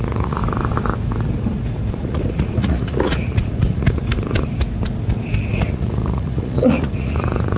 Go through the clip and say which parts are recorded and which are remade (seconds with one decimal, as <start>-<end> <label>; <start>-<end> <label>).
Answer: 0.0-0.4 remade; 0.4-1.9 recorded; 1.9-4.0 remade; 4.0-5.5 recorded; 5.5-7.6 remade